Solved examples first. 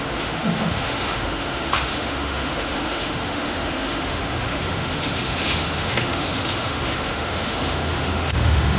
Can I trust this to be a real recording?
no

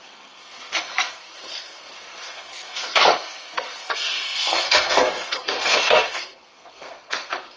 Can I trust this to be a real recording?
no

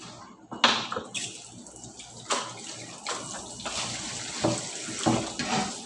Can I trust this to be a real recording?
yes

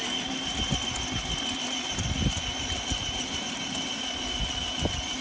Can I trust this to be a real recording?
yes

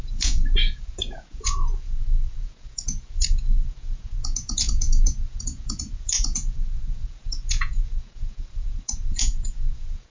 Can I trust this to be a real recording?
no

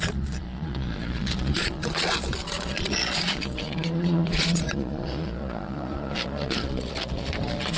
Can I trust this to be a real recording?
no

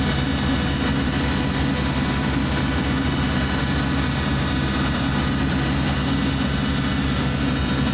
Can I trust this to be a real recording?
yes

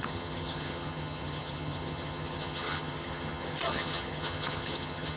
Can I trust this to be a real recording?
no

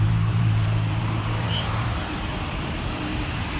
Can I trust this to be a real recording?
no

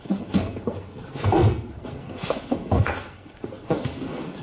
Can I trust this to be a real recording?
no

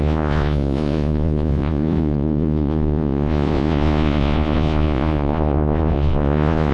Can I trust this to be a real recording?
no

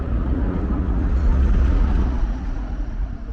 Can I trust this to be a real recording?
no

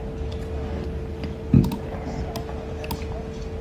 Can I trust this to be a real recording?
yes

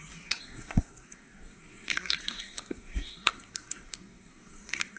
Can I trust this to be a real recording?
no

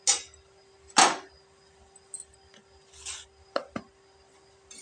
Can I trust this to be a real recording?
yes